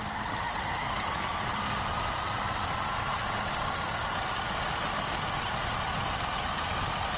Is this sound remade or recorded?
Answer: recorded